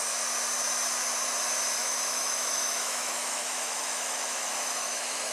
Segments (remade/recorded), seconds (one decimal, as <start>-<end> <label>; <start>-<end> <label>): 0.0-1.8 recorded; 1.8-5.3 remade